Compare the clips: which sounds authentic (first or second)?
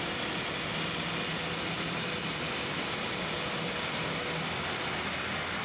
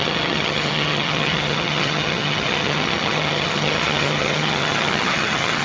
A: first